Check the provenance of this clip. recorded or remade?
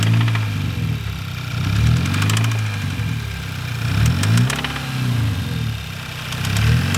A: recorded